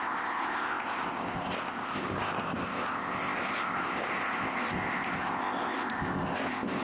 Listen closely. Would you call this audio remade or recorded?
remade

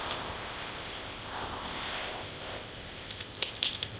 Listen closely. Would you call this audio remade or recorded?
remade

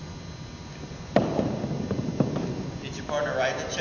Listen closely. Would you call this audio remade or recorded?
recorded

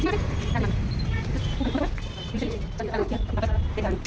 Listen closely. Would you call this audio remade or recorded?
recorded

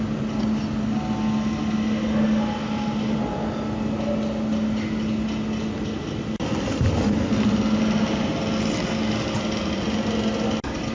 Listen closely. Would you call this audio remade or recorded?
recorded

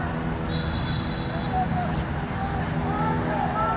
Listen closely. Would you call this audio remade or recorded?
recorded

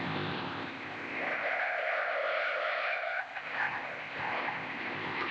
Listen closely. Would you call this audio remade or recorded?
remade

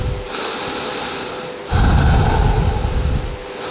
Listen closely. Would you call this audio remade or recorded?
recorded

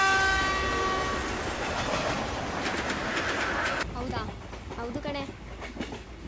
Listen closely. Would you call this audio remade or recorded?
recorded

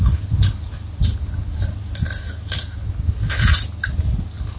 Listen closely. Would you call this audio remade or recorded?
recorded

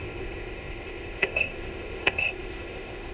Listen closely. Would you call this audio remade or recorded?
remade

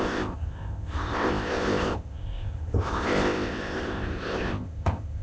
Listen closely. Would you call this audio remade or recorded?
remade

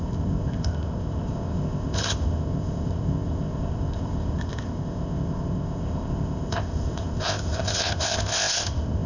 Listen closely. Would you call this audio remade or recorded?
remade